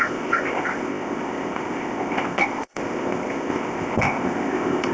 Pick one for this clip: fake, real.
fake